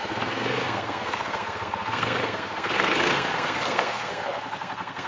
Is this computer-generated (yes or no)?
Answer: yes